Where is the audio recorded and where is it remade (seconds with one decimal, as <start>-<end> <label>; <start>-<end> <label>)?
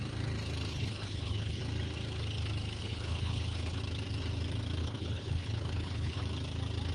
0.0-0.7 recorded; 0.7-1.6 remade; 1.6-2.8 recorded; 2.8-3.8 remade; 3.8-4.8 recorded; 4.8-6.2 remade; 6.2-6.9 recorded